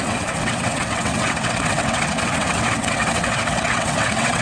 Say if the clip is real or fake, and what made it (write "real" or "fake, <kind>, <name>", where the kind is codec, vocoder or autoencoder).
fake, vocoder, WaveNeXt